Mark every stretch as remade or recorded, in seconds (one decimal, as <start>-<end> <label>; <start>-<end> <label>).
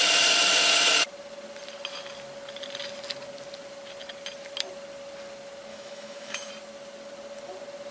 0.0-5.7 recorded; 5.7-6.5 remade; 6.5-7.9 recorded